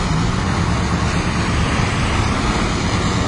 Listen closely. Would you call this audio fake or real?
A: real